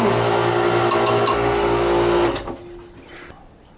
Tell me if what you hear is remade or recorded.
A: recorded